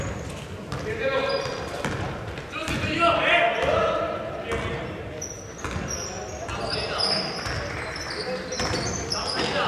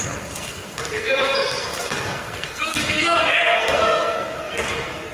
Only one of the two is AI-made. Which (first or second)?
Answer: second